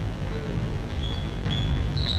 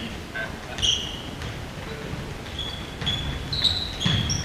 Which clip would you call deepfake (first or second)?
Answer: first